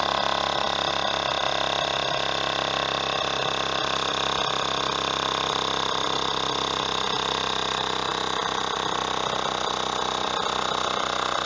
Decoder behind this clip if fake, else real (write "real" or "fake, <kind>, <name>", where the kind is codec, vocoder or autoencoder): real